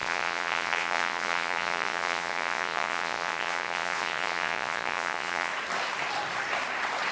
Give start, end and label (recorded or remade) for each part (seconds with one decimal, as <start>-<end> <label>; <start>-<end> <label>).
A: 0.0-5.5 remade; 5.5-7.1 recorded